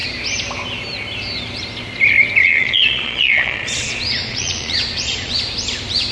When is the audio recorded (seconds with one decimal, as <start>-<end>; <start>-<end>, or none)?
0.0-2.4; 5.4-6.1